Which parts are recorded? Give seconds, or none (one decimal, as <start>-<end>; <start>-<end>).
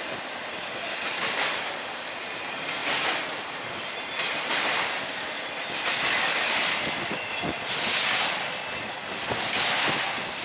0.0-10.4